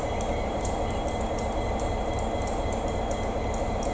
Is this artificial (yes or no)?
yes